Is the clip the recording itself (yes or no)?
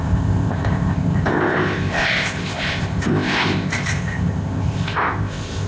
no